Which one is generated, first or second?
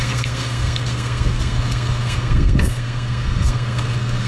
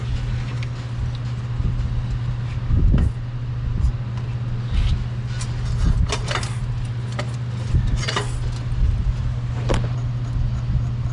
first